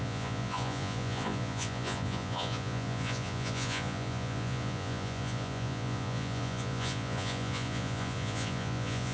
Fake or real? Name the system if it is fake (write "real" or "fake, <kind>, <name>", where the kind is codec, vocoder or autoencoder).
fake, vocoder, Vocos